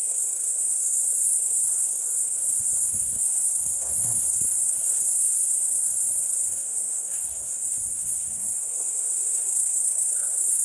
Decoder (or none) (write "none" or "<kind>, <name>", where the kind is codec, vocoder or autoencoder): codec, SNAC